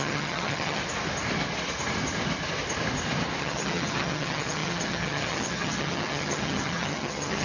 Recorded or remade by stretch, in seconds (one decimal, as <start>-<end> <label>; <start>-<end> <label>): 0.0-0.8 remade; 0.8-3.4 recorded; 3.4-7.4 remade